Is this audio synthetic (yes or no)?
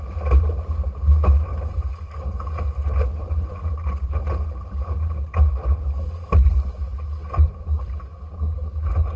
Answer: no